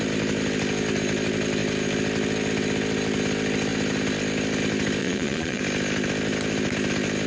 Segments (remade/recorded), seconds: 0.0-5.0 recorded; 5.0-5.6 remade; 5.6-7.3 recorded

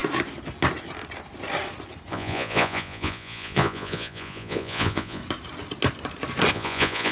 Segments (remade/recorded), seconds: 0.0-2.1 recorded; 2.1-5.2 remade; 5.2-6.5 recorded; 6.5-7.1 remade

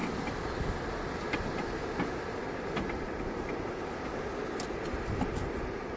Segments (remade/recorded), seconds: 0.0-6.0 recorded